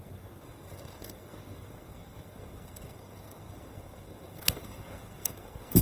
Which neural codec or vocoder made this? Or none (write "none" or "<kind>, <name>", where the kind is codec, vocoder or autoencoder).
codec, SNAC